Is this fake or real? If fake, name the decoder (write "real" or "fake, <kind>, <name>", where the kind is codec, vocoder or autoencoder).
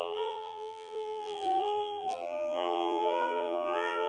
fake, vocoder, BigVGAN v2